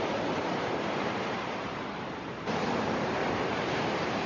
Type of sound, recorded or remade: remade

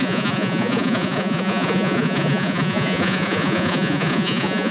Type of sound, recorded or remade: remade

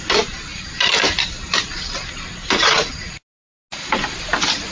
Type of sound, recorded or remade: recorded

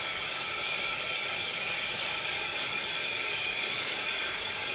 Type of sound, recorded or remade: remade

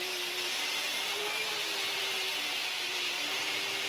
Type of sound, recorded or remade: remade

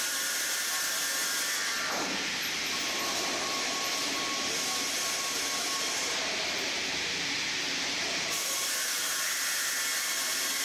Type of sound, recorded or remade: recorded